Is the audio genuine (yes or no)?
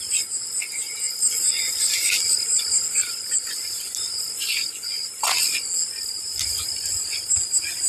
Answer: yes